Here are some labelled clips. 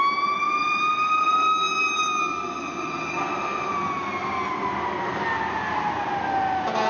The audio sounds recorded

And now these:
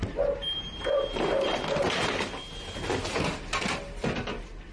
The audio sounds recorded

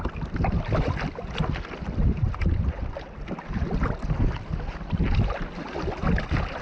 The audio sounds recorded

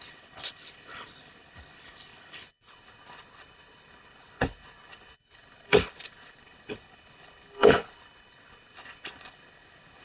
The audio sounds remade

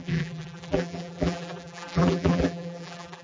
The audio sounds remade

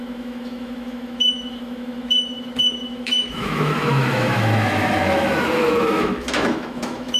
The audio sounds remade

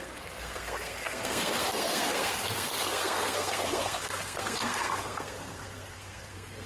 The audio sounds remade